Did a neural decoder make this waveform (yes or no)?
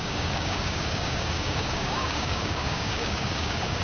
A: yes